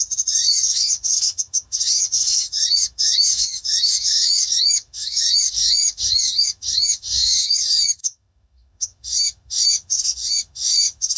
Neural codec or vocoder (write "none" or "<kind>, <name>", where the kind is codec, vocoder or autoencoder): autoencoder, DAC-VAE